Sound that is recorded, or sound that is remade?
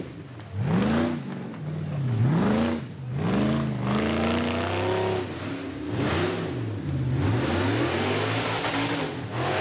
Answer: recorded